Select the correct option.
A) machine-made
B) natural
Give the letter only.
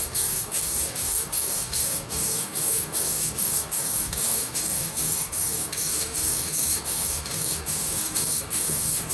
A